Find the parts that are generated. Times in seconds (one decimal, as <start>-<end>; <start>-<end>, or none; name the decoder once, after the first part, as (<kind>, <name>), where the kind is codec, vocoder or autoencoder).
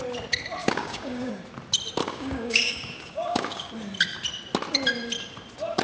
0.6-1.3 (codec, DAC); 2.0-3.7